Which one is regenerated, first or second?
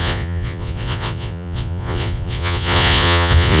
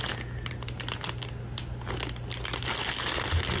first